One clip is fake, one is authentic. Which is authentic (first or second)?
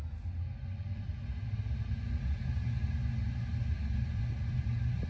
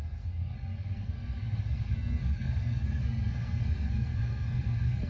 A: first